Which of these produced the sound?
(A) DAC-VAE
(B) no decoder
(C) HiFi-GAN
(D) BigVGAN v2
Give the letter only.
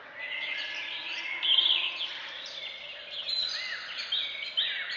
B